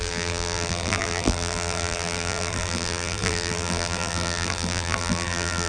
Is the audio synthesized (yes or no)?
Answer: yes